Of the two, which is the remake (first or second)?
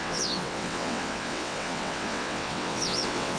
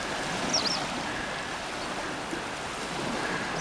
first